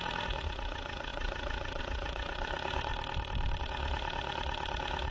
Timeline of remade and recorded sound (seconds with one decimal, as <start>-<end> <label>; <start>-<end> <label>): 0.0-2.9 remade; 2.9-3.6 recorded; 3.6-5.1 remade